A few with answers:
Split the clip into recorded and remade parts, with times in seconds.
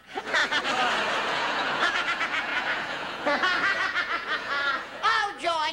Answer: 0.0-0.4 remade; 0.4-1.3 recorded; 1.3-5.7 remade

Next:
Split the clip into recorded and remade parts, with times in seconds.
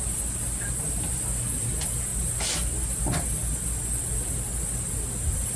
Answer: 0.0-5.6 recorded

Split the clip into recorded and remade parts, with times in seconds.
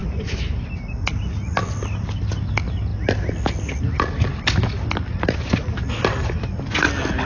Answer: 0.0-7.3 recorded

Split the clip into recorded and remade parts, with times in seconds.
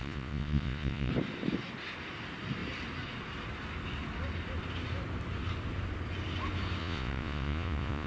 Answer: 0.0-1.1 remade; 1.1-6.8 recorded; 6.8-8.1 remade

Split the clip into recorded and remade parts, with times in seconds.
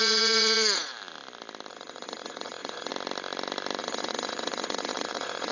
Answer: 0.0-0.9 remade; 0.9-1.7 recorded; 1.7-2.9 remade; 2.9-3.8 recorded; 3.8-5.5 remade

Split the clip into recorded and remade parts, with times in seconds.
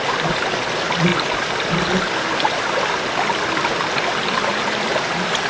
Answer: 0.0-5.5 recorded